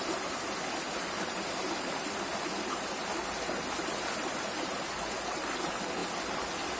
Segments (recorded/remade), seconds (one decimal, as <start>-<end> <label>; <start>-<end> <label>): 0.0-6.8 recorded